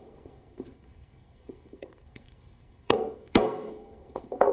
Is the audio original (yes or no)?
no